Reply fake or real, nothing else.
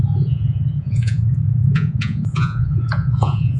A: fake